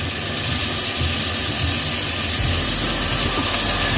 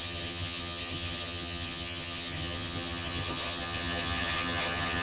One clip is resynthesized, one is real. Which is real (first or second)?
first